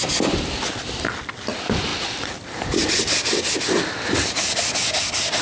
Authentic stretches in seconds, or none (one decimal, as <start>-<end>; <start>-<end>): 0.0-5.4